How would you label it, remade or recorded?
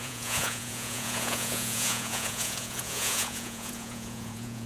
remade